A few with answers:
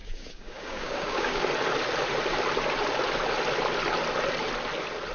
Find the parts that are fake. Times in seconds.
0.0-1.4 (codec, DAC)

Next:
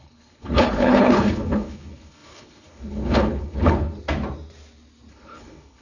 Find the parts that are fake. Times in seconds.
0.0-3.9 (codec, HILCodec); 5.1-5.8

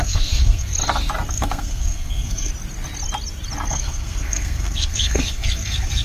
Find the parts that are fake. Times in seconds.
0.0-0.7 (codec, SNAC); 1.3-2.5; 3.7-6.0